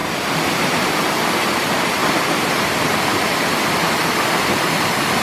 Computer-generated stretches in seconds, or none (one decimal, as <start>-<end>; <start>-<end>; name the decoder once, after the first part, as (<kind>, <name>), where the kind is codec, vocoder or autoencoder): none